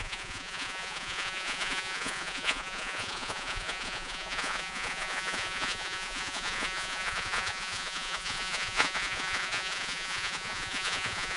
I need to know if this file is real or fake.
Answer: fake